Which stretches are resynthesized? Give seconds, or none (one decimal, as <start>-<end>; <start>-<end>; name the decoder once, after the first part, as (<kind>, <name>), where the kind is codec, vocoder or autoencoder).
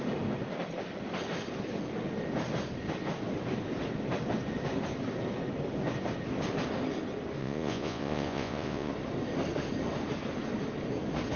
7.4-8.9 (vocoder, Vocos)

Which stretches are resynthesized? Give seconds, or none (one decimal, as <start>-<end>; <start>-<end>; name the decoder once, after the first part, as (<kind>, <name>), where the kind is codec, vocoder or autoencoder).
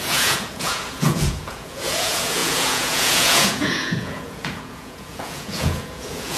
0.0-6.4 (vocoder, Vocos)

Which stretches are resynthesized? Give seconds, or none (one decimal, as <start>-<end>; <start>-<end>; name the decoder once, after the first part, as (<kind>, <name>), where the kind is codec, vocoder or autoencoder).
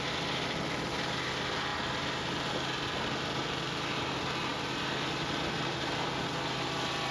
none